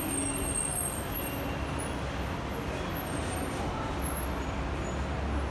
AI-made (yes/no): no